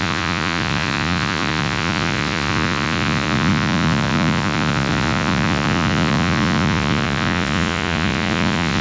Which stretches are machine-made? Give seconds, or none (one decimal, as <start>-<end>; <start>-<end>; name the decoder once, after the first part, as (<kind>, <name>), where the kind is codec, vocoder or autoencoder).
0.0-8.8 (vocoder, Vocos)